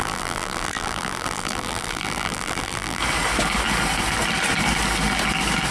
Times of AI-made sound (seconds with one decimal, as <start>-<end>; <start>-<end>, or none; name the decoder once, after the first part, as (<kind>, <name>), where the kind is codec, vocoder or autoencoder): 0.0-3.0 (vocoder, BigVGAN v2)